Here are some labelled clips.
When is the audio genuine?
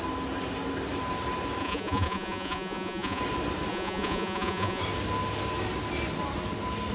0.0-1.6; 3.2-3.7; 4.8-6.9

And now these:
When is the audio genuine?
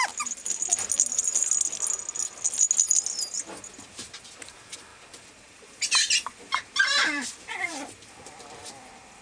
0.0-4.9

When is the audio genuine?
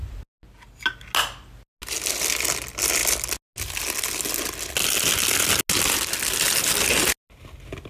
0.0-7.9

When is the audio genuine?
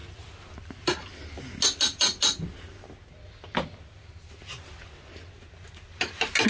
0.0-6.5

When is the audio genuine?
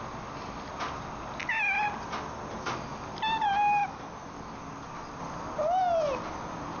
0.0-6.8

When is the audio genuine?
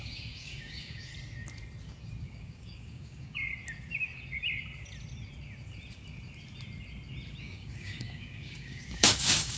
1.1-2.2; 3.5-7.4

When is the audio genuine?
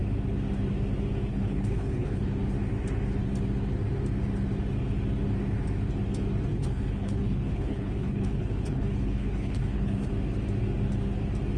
0.0-1.3; 2.2-6.5; 10.1-11.6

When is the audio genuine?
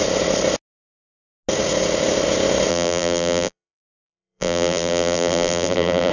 0.0-2.7